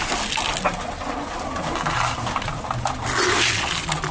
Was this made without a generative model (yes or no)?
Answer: yes